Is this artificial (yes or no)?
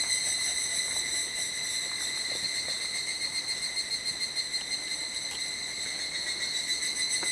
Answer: no